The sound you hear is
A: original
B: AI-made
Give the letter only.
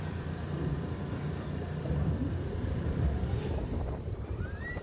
B